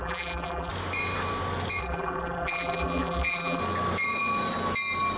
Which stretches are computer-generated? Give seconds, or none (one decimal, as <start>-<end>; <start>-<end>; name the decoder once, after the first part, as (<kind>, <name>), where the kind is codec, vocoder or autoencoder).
0.0-0.7 (vocoder, BigVGAN v2); 1.8-3.6